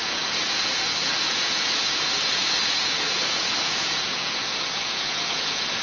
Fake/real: fake